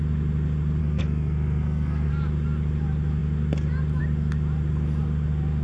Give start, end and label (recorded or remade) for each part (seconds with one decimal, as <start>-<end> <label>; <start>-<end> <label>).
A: 0.0-0.8 recorded; 0.8-2.1 remade; 2.1-5.6 recorded